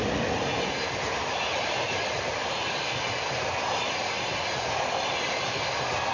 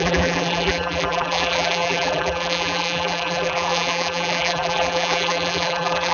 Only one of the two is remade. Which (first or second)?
second